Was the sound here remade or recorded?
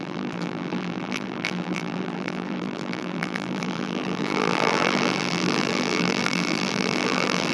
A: remade